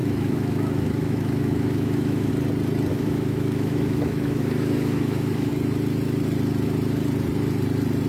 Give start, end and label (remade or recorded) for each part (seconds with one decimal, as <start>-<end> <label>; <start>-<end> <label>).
0.0-2.3 remade; 2.3-2.9 recorded; 2.9-5.5 remade; 5.5-8.1 recorded